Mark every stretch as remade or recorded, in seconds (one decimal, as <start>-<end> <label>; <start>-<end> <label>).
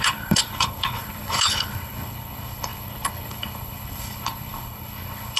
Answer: 0.0-5.4 remade